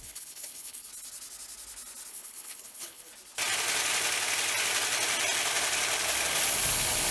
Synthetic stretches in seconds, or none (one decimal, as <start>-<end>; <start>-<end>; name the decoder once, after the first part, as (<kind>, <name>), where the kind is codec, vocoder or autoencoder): 0.0-0.9 (codec, HILCodec); 2.1-3.1